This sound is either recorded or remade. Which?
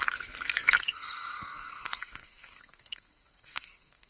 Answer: remade